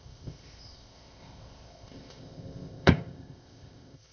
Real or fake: fake